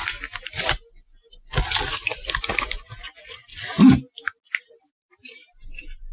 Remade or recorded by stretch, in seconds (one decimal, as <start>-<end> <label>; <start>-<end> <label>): 0.0-2.5 recorded; 2.5-3.5 remade; 3.5-4.6 recorded; 4.6-6.1 remade